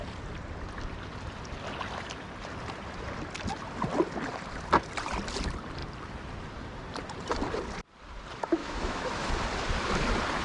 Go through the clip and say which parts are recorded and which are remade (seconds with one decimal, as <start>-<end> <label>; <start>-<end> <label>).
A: 0.0-8.6 recorded; 8.6-9.3 remade; 9.3-10.4 recorded